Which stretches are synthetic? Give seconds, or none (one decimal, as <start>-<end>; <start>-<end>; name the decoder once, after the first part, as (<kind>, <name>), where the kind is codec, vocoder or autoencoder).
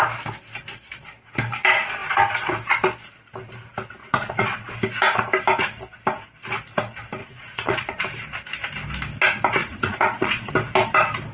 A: 4.0-4.7 (vocoder, Vocos); 7.2-8.0; 9.6-10.5